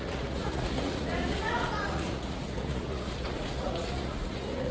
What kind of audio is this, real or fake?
fake